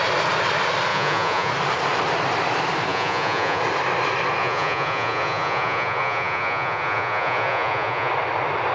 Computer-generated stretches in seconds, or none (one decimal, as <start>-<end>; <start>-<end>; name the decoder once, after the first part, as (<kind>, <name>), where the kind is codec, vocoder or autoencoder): 0.9-1.5 (vocoder, Vocos); 2.9-3.6; 4.4-8.1